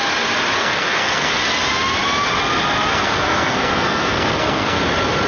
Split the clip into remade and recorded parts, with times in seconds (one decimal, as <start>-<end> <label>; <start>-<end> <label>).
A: 0.0-0.6 recorded; 0.6-1.4 remade; 1.4-2.9 recorded; 2.9-4.8 remade; 4.8-5.3 recorded